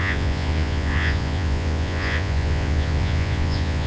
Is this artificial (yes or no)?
yes